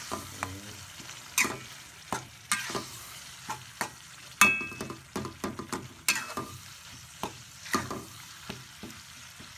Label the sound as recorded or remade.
recorded